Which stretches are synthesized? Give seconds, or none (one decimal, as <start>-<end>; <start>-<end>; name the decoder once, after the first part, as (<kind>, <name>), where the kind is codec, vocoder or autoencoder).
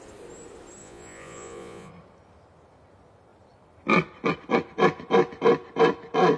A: 0.8-1.9 (vocoder, Vocos)